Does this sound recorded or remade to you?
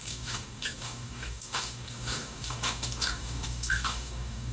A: remade